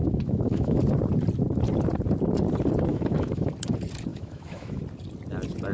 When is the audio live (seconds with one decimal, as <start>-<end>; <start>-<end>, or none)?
0.8-2.9; 3.5-4.1; 4.8-5.7